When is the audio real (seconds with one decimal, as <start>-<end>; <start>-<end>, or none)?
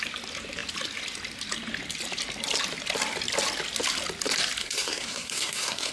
0.0-4.6